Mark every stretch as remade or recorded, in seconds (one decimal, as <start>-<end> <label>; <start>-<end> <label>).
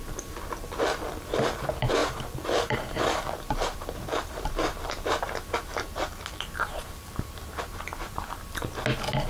0.0-2.0 recorded; 2.0-5.1 remade; 5.1-5.7 recorded; 5.7-8.3 remade; 8.3-9.3 recorded